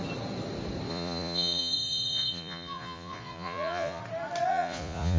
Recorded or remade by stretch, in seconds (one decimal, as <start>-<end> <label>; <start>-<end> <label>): 0.0-0.9 recorded; 0.9-4.0 remade; 4.0-4.5 recorded; 4.5-5.2 remade